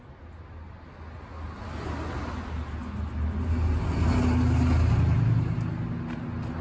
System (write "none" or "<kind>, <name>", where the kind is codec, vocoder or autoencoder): none